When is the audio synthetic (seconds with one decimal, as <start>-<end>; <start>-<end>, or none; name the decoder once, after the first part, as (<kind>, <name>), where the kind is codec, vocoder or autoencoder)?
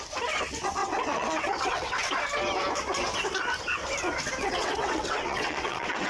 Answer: 0.8-2.1 (vocoder, WaveNeXt); 4.4-6.1